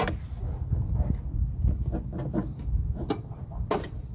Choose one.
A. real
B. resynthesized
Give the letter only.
A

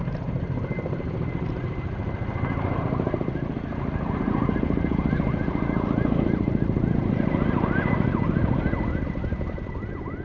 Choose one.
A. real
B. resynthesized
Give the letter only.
A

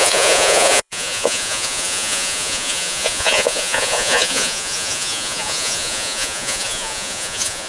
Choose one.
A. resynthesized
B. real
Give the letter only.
A